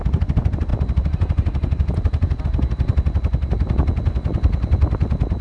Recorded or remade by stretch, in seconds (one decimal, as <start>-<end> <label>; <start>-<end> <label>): 0.0-5.4 recorded